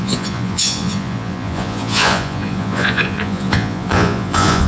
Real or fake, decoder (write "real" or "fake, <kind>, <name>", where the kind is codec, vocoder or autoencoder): fake, vocoder, Vocos